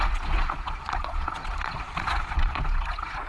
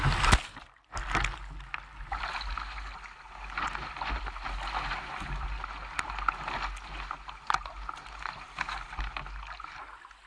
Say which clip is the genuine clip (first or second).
second